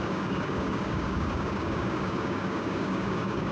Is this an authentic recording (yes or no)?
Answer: no